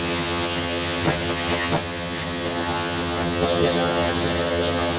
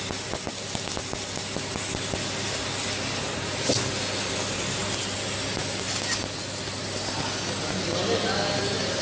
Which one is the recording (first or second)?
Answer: second